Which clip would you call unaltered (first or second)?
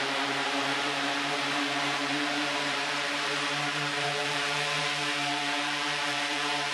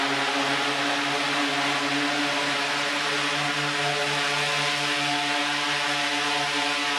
second